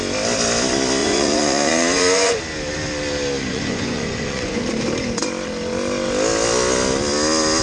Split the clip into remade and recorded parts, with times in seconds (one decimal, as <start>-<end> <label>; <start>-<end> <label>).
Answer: 0.0-1.0 recorded; 1.0-2.4 remade; 2.4-3.4 recorded; 3.4-4.6 remade; 4.6-7.6 recorded